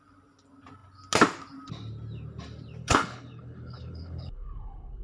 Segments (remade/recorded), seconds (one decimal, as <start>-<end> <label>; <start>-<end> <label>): 0.0-2.8 recorded; 2.8-5.0 remade